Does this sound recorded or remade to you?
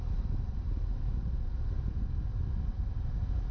recorded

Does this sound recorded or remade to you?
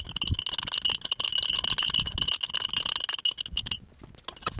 recorded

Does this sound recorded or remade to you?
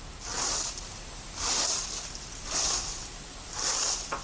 recorded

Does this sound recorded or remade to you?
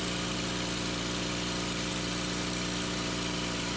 recorded